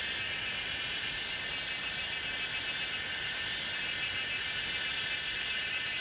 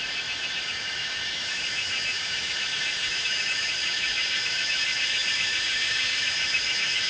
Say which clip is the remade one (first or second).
second